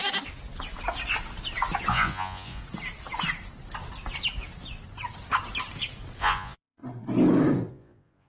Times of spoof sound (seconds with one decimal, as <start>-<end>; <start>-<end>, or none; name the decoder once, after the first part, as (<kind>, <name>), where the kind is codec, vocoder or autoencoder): 1.9-2.6 (vocoder, Vocos); 6.2-6.8; 7.7-8.3

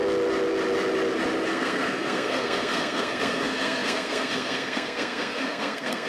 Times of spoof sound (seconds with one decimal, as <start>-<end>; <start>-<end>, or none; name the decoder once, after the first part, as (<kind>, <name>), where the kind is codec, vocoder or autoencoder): 1.5-6.1 (codec, SNAC)

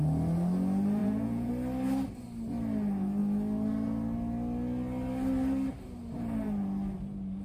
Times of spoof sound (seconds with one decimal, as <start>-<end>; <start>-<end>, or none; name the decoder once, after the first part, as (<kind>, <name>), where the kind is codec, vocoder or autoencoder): 1.0-1.5 (vocoder, Vocos)

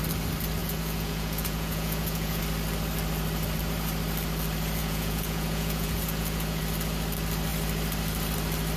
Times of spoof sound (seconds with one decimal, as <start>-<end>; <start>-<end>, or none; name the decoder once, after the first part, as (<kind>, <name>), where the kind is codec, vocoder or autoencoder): 0.6-2.4 (vocoder, Vocos); 4.8-6.6

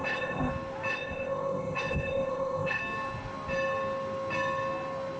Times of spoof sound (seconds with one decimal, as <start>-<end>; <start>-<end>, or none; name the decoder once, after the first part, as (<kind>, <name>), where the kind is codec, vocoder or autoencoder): 0.0-0.5 (codec, ZipCodec); 0.9-2.8

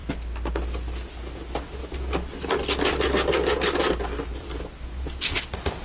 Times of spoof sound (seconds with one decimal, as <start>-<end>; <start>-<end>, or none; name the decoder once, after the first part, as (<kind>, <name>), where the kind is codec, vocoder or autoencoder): none